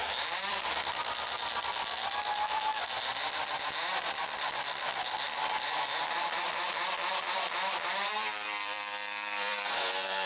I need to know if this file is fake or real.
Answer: fake